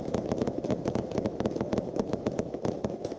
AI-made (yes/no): yes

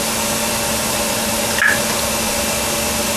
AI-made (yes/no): no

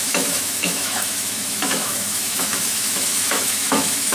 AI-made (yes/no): yes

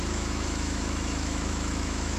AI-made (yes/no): yes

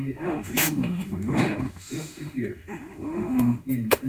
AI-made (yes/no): yes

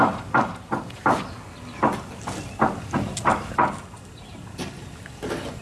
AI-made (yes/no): no